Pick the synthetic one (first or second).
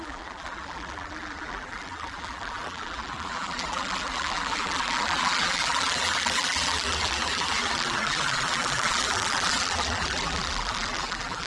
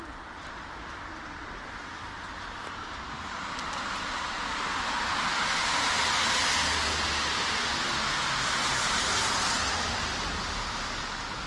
first